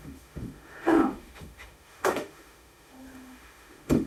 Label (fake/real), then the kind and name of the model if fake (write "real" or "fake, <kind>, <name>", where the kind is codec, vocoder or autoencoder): fake, autoencoder, DAC-VAE